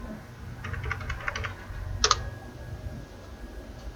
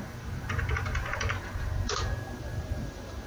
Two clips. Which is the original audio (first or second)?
first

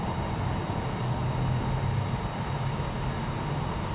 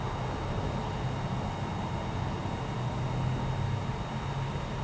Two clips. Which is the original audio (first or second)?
second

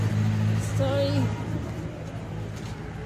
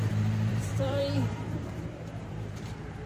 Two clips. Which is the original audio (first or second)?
first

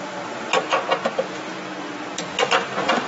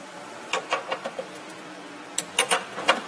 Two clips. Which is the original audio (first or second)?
first